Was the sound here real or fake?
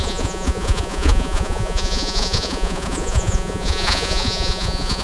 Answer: fake